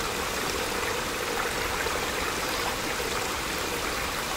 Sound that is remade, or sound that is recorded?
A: recorded